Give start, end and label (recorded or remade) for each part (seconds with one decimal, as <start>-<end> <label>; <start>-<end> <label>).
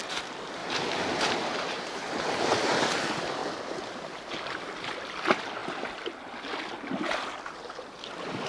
0.0-0.6 recorded; 0.6-2.2 remade; 2.2-8.5 recorded